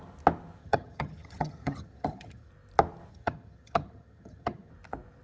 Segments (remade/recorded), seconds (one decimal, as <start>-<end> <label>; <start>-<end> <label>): 0.0-0.6 recorded; 0.6-2.5 remade; 2.5-3.1 recorded; 3.1-4.7 remade; 4.7-5.2 recorded